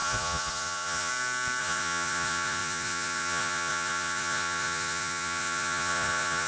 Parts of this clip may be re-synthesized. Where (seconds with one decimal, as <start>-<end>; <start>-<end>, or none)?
0.0-1.1; 1.6-6.5